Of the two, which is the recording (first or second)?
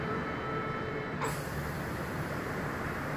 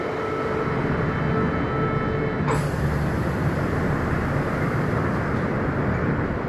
second